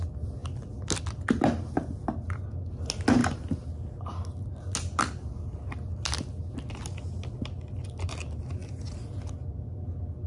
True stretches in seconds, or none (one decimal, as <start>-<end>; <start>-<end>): 0.0-10.3